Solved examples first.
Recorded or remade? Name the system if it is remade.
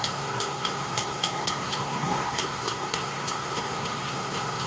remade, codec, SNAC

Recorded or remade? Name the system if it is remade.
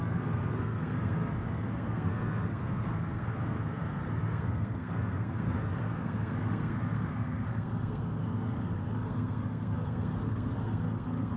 remade, codec, SNAC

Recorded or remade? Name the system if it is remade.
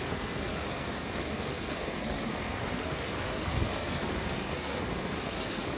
remade, codec, SNAC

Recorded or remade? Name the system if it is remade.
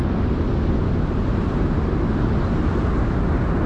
recorded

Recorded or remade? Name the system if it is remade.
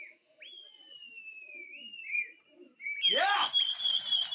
recorded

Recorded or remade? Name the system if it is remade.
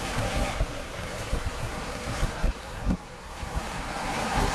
remade, codec, SNAC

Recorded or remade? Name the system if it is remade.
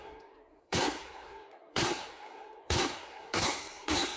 remade, codec, SNAC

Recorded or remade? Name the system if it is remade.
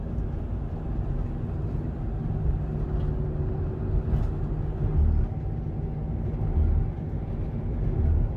recorded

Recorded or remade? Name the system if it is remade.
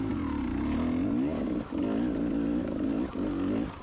recorded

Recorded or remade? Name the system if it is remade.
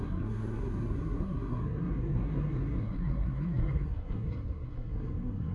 remade, codec, SNAC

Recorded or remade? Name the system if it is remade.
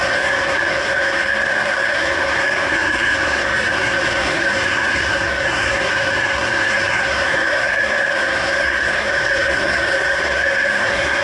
remade, codec, SNAC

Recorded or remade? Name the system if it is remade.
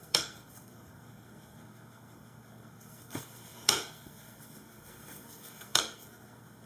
remade, codec, SNAC